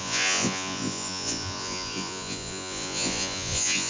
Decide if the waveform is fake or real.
fake